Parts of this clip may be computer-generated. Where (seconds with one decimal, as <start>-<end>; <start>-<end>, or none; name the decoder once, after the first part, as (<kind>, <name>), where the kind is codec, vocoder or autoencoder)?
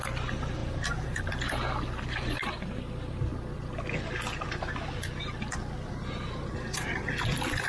none